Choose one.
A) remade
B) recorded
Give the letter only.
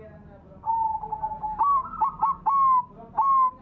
B